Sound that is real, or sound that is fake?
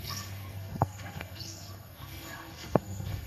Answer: fake